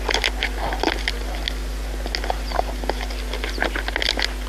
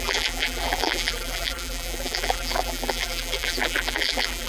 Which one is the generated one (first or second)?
second